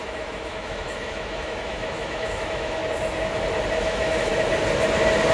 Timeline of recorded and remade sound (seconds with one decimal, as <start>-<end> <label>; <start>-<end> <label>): 0.0-2.8 remade; 2.8-3.8 recorded; 3.8-4.3 remade; 4.3-5.3 recorded